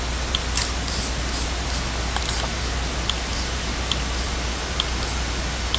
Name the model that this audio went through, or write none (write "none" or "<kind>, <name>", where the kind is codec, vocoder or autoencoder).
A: none